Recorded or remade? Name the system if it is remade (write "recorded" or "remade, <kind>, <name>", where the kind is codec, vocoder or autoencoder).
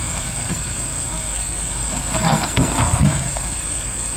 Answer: remade, codec, SNAC